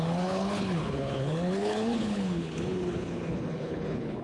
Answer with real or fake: fake